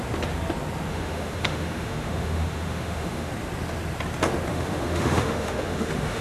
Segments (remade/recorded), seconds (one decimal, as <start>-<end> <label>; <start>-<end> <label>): 0.0-0.9 recorded; 0.9-3.3 remade; 3.3-4.5 recorded; 4.5-6.2 remade